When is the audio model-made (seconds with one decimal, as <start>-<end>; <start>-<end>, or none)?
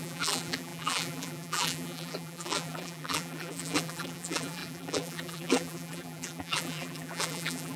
0.0-7.8